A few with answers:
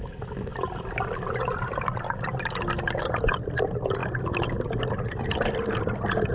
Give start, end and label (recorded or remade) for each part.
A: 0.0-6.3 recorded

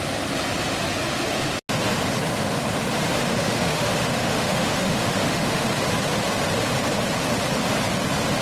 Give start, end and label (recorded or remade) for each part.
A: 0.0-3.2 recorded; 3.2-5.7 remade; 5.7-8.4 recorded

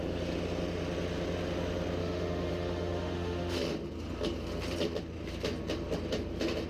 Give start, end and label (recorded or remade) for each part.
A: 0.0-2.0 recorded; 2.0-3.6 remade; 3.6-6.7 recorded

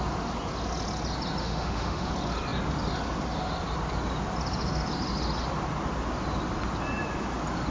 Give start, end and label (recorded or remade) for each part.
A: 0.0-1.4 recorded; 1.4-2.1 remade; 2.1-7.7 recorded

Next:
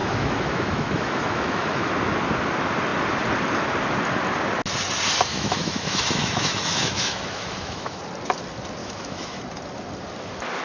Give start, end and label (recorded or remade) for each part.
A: 0.0-1.9 remade; 1.9-5.3 recorded; 5.3-8.0 remade; 8.0-8.8 recorded; 8.8-9.4 remade; 9.4-10.6 recorded

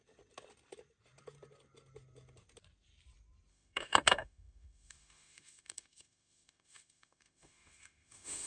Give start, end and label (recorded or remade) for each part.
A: 0.0-3.5 recorded; 3.5-8.5 remade

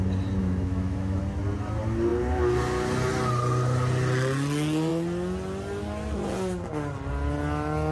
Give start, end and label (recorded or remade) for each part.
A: 0.0-0.4 recorded; 0.4-1.2 remade; 1.2-7.9 recorded